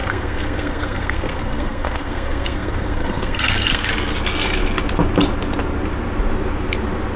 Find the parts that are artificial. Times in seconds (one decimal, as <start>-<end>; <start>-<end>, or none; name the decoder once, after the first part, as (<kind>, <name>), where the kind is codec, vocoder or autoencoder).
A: 0.0-3.9 (codec, SNAC)